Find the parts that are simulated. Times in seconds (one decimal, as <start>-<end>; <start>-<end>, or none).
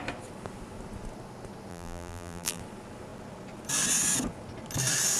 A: 1.7-2.6